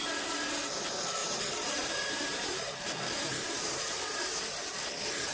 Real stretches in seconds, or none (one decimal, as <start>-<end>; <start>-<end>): 0.0-1.2; 4.4-5.3